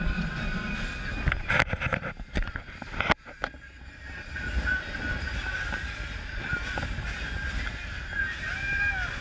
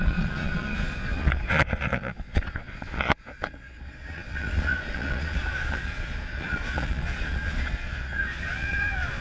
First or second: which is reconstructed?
second